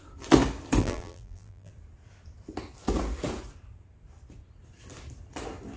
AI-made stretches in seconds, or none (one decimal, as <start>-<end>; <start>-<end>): 0.8-1.7